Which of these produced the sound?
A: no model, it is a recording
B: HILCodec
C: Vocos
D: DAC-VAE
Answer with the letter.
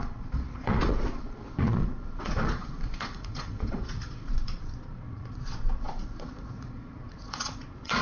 C